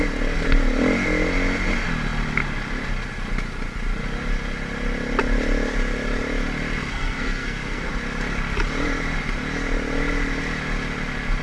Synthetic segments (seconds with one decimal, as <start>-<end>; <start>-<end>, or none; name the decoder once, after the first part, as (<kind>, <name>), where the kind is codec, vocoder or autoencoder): 6.8-7.9 (codec, SNAC)